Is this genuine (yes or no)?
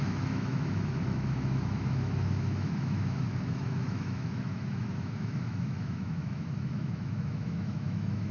no